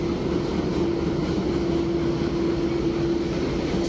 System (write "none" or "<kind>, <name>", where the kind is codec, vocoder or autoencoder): none